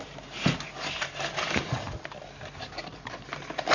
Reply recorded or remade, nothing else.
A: recorded